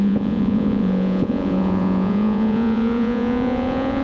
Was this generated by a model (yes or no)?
yes